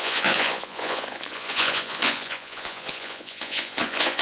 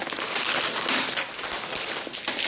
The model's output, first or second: first